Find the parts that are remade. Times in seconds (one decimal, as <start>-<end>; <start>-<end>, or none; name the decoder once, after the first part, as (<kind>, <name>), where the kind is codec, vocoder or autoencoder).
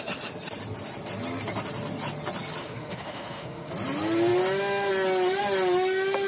2.6-3.7 (autoencoder, DAC-VAE)